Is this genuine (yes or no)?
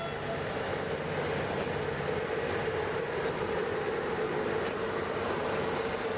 yes